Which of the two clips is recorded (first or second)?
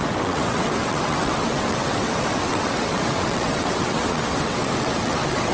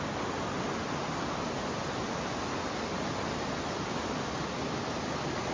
second